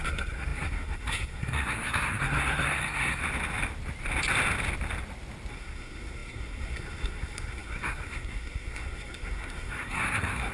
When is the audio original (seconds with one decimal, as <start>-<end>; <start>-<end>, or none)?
3.2-5.5